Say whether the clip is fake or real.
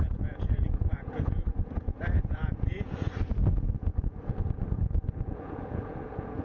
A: fake